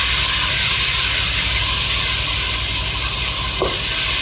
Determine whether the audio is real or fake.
real